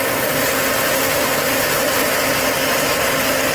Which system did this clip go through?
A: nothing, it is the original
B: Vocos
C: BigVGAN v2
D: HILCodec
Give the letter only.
A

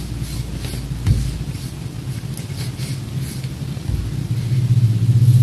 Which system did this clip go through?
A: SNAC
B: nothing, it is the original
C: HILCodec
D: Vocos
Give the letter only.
B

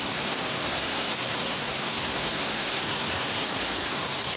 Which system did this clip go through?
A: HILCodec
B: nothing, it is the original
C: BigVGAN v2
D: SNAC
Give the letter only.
D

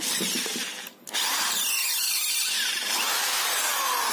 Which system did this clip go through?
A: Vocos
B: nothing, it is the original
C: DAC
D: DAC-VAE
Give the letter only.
B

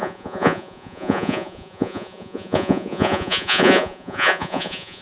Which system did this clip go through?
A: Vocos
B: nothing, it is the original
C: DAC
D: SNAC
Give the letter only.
A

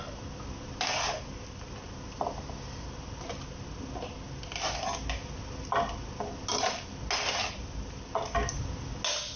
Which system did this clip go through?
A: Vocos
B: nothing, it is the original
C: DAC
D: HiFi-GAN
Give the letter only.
B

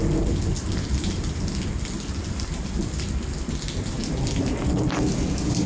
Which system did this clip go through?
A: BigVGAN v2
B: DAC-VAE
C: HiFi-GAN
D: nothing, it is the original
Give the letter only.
D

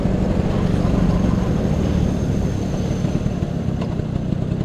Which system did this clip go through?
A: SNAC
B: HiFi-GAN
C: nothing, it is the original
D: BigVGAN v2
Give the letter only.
C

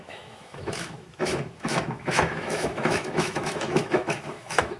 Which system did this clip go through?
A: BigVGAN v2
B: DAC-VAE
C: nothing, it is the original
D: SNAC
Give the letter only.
B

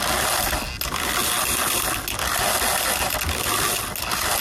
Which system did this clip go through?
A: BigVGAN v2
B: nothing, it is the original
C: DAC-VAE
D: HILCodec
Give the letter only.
B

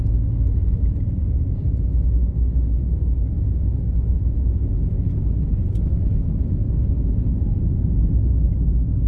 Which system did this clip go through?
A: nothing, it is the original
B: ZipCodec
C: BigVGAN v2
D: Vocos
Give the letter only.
A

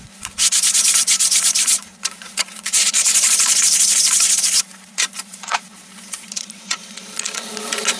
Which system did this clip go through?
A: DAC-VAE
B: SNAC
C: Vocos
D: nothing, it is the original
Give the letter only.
C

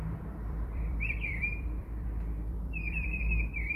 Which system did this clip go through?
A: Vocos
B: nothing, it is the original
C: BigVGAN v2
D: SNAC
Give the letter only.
C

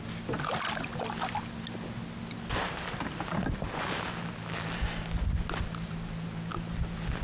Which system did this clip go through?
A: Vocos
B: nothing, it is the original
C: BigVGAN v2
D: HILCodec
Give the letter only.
B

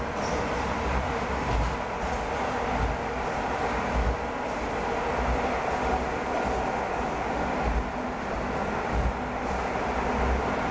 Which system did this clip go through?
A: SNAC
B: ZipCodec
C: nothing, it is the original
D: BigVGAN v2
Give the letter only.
C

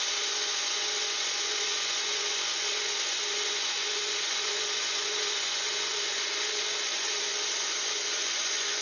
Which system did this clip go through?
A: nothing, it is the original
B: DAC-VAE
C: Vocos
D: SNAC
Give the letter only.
C